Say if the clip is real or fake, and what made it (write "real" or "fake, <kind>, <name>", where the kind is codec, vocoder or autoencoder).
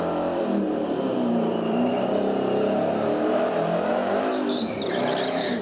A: fake, vocoder, BigVGAN v2